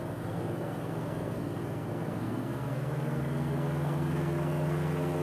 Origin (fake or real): fake